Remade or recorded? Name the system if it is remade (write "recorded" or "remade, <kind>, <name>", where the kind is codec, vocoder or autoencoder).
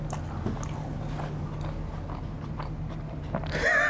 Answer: recorded